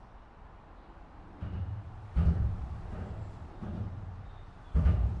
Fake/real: fake